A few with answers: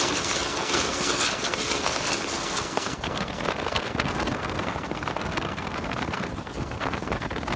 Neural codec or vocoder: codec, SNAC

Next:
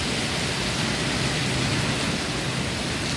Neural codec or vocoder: none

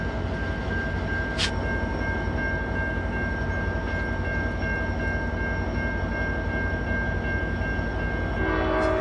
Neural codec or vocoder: none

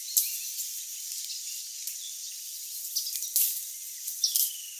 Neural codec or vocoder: none